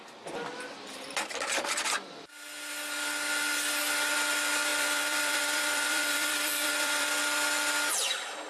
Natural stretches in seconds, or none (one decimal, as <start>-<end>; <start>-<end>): 0.0-4.7; 7.2-8.5